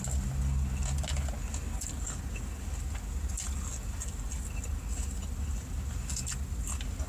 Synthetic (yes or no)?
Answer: no